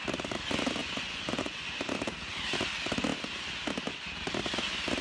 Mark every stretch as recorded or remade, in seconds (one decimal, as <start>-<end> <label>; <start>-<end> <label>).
0.0-0.8 recorded; 0.8-1.8 remade; 1.8-5.0 recorded